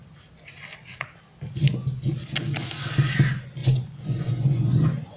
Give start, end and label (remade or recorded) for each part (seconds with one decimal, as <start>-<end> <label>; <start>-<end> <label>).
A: 0.0-3.6 recorded; 3.6-5.2 remade